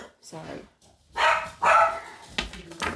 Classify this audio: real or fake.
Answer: real